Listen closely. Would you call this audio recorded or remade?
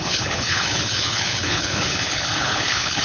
remade